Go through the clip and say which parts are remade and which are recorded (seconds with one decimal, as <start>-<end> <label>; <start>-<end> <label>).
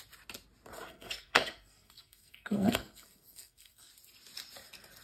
0.0-0.9 recorded; 0.9-3.9 remade; 3.9-5.0 recorded